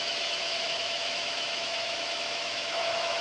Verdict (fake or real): fake